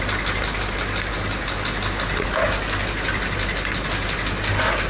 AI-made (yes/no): no